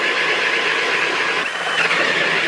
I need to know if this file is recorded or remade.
recorded